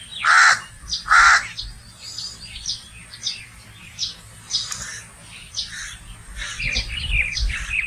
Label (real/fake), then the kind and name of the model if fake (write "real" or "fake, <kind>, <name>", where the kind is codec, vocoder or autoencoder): real